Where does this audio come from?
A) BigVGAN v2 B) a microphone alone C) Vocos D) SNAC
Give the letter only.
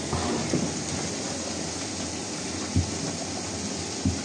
B